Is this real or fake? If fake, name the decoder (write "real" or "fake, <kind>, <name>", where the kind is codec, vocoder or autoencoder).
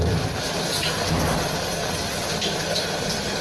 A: real